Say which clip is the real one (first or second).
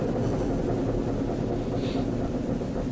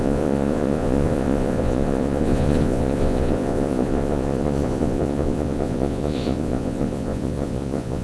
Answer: first